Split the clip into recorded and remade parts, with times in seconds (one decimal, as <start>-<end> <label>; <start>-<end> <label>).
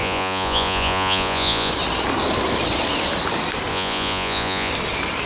0.0-1.7 remade; 1.7-3.7 recorded; 3.7-4.7 remade; 4.7-5.3 recorded